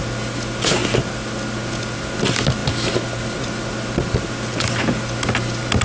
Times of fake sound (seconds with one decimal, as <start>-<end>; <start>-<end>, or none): none